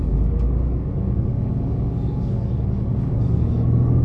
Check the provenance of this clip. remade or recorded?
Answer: remade